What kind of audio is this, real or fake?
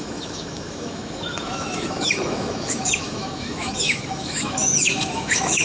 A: fake